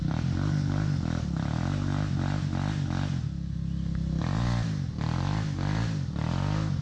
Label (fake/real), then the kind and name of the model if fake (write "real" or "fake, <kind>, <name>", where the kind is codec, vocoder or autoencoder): real